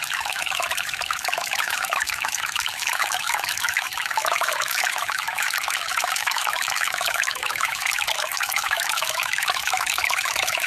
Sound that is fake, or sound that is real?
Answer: fake